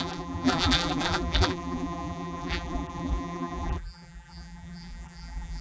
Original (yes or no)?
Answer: no